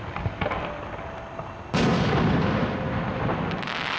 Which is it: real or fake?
real